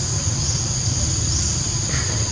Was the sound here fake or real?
real